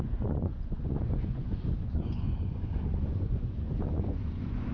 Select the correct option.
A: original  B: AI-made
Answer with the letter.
B